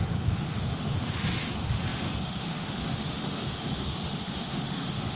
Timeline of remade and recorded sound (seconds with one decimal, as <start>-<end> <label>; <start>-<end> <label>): 0.0-5.2 remade